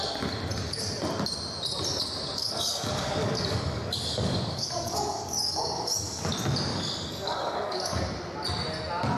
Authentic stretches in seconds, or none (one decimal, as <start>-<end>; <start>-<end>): 0.0-2.4; 6.3-6.7; 8.0-9.2